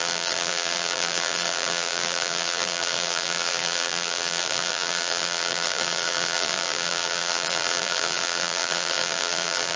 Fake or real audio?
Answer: fake